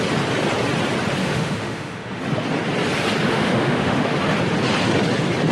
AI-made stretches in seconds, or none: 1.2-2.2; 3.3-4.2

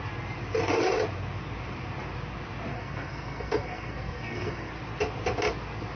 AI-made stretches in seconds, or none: 2.7-4.7

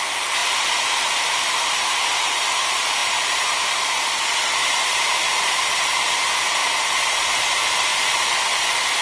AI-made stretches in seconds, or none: 0.0-6.6; 7.2-7.9

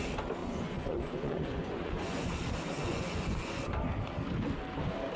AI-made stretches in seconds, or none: 0.4-2.3; 2.8-3.6

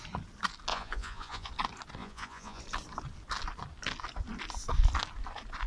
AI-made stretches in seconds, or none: 0.7-1.5; 2.0-2.6

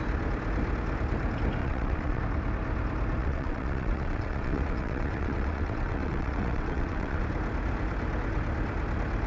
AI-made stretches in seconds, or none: 1.6-2.2; 3.2-7.2